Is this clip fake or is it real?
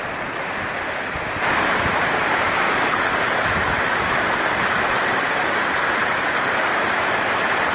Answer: real